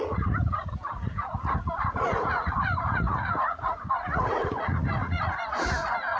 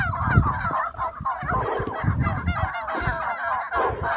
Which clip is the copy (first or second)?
first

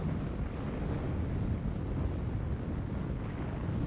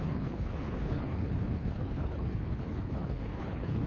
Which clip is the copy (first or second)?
second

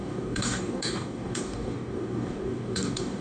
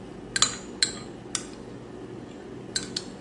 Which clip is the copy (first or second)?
first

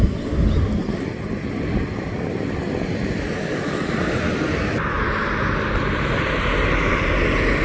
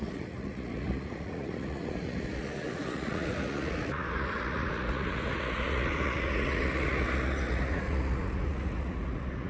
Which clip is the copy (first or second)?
second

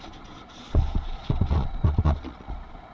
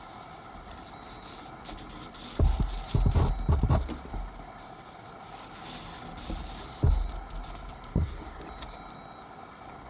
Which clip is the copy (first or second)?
first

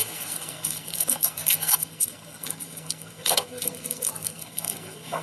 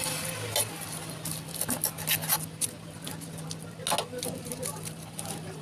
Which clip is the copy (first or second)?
first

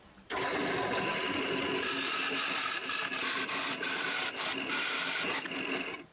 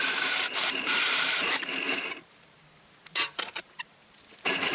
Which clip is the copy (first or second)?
second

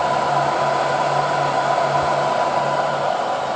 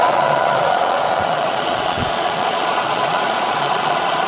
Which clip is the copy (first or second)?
second